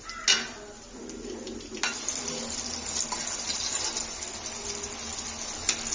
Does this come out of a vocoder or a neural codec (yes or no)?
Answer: no